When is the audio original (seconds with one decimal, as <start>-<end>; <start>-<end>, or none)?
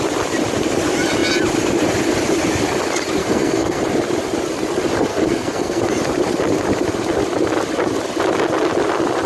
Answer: 0.0-3.2; 3.8-5.1; 5.8-9.3